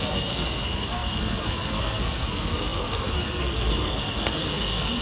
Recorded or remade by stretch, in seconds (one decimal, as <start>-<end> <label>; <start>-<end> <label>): 0.0-5.0 remade